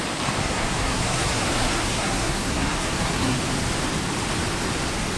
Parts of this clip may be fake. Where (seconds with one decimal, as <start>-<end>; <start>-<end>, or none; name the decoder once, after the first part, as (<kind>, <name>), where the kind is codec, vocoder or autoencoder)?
0.4-3.4 (codec, SNAC)